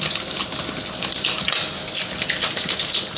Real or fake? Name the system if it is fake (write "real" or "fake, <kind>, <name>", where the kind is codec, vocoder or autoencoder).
real